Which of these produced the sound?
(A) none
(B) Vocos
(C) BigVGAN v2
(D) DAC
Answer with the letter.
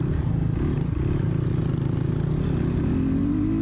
A